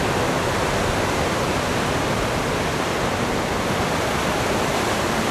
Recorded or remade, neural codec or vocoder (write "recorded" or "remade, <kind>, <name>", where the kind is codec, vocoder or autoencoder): recorded